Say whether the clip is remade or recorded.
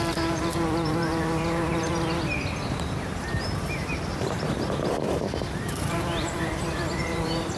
remade